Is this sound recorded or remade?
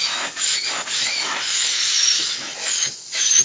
remade